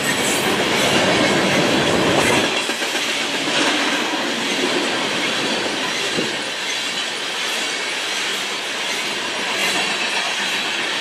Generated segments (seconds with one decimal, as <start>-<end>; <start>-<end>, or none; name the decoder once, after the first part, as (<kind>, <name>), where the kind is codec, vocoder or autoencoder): 2.4-6.1 (vocoder, BigVGAN v2); 8.3-8.9